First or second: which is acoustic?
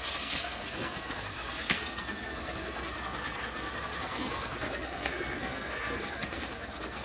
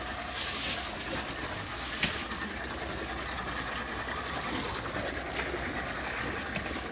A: second